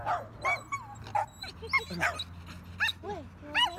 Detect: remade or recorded recorded